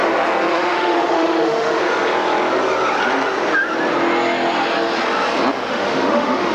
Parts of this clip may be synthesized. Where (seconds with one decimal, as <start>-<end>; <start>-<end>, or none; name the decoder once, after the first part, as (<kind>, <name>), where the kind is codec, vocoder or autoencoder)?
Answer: 0.5-1.8 (autoencoder, DAC-VAE); 5.7-6.5